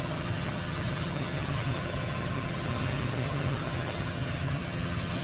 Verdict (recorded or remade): remade